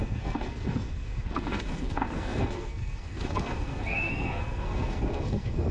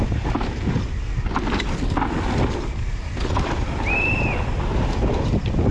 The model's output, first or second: first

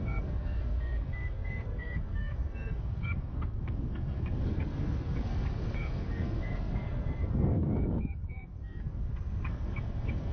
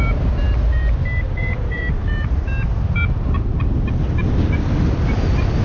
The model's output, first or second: first